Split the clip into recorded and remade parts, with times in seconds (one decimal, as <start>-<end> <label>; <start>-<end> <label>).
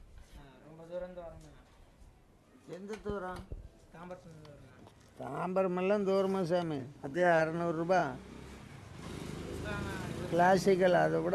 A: 0.0-6.8 recorded; 6.8-7.4 remade; 7.4-11.3 recorded